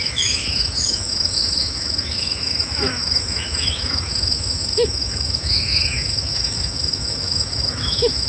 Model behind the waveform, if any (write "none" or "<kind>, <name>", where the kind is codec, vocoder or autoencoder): autoencoder, DAC-VAE